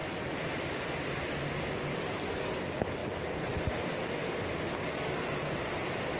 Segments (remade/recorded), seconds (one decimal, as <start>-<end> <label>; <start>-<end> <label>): 0.0-6.2 recorded